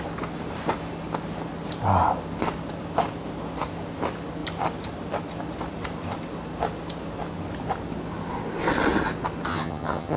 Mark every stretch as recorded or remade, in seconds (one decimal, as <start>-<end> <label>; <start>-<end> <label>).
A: 0.0-9.5 recorded; 9.5-10.2 remade